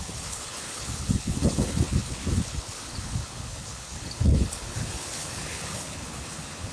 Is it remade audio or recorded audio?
remade